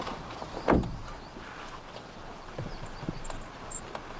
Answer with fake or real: real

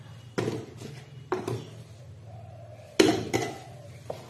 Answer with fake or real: real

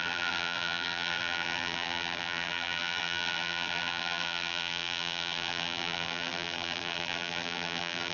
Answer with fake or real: fake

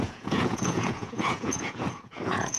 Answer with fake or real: fake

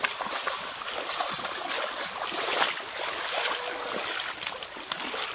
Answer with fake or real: real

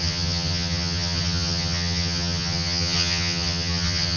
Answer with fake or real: fake